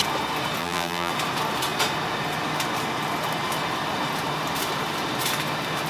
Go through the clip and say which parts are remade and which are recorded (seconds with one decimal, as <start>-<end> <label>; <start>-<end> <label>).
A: 0.0-0.6 recorded; 0.6-1.1 remade; 1.1-5.9 recorded

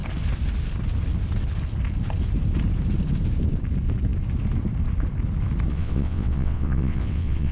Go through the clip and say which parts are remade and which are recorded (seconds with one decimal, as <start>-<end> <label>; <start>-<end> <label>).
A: 0.0-5.7 recorded; 5.7-7.5 remade